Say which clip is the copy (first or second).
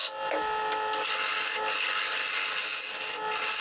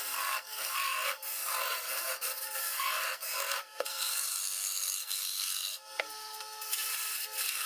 second